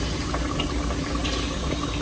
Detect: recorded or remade recorded